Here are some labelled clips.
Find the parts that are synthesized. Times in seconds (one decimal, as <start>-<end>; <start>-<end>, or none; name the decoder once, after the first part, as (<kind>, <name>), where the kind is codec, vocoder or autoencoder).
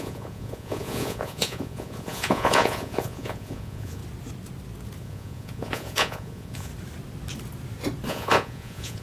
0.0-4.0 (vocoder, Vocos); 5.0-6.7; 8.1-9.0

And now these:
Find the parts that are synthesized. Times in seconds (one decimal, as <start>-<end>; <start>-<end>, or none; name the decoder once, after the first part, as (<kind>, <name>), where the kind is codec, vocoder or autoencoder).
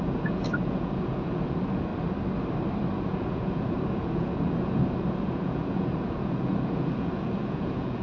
0.0-1.9 (vocoder, Vocos); 3.1-8.0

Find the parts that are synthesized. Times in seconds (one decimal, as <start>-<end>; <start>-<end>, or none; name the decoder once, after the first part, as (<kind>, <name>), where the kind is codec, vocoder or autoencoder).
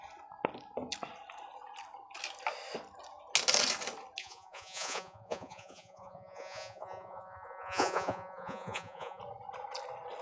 4.2-9.2 (vocoder, Vocos)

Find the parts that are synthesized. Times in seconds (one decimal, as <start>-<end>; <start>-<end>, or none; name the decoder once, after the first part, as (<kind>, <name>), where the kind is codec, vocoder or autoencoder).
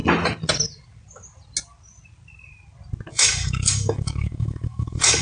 3.1-5.2 (autoencoder, DAC-VAE)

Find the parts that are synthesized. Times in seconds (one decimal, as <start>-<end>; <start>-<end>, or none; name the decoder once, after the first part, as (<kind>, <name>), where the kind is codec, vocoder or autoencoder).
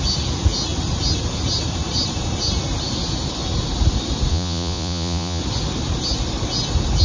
4.3-5.4 (vocoder, Vocos)